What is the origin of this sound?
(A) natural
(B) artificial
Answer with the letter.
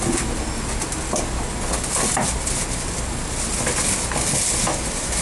A